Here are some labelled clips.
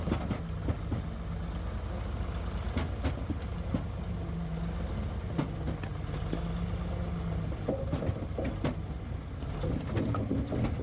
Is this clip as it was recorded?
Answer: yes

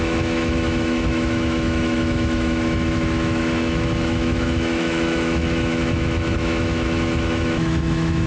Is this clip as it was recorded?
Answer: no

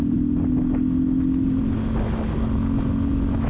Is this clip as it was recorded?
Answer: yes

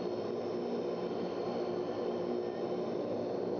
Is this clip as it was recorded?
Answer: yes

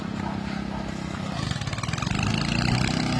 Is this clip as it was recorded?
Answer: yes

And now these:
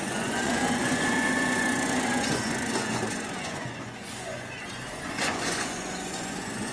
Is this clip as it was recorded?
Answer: no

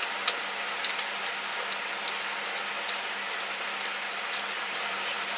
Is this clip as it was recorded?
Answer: yes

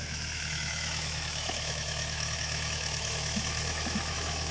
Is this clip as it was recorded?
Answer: no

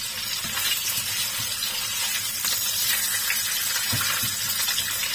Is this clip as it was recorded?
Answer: yes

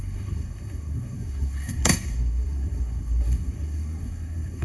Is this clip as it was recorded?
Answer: no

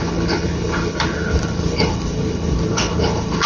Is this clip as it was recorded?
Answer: no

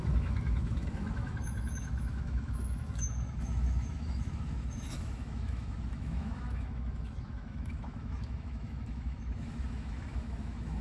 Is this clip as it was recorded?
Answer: no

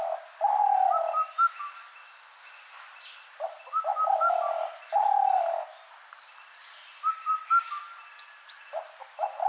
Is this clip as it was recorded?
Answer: yes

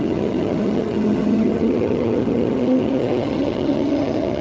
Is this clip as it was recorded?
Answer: no